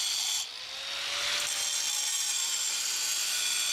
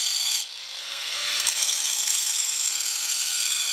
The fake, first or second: second